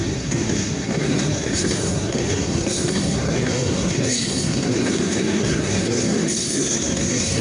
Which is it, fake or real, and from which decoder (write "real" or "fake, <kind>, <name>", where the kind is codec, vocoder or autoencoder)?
fake, codec, SNAC